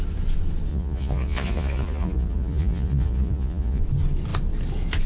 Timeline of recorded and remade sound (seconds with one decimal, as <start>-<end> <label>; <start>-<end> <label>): 0.0-0.7 recorded; 0.7-3.8 remade; 3.8-5.1 recorded